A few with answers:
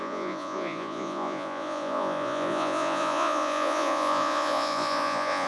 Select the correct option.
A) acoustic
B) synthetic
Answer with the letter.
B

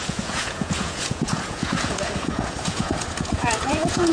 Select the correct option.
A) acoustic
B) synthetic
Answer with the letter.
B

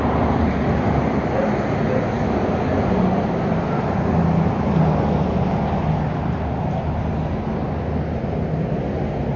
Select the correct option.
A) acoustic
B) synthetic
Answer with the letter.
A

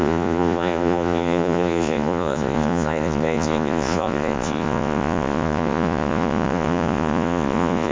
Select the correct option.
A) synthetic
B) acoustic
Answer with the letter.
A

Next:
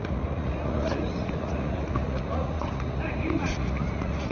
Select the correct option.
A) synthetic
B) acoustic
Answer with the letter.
A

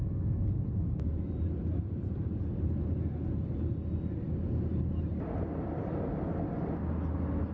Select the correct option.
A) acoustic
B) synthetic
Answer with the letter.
A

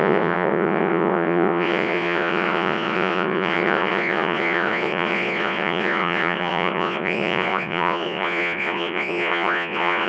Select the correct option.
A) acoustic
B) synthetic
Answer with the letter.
B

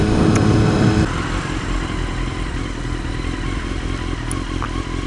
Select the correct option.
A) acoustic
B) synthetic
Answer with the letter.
A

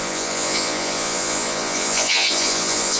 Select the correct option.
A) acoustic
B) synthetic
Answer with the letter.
B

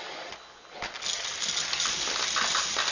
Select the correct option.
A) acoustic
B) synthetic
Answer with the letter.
A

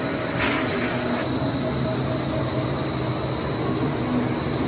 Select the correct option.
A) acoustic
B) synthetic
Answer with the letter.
A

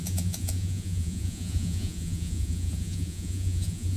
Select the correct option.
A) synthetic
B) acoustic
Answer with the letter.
A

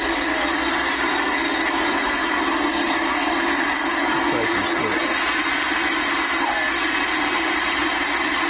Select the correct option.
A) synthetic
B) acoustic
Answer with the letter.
B